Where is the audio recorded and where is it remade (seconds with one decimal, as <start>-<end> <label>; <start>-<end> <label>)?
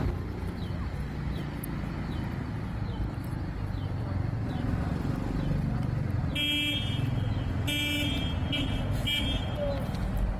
0.0-10.4 recorded